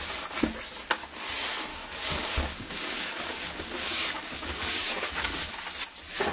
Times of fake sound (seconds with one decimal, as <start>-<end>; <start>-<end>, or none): 1.7-5.5